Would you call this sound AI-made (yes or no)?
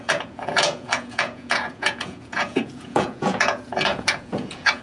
yes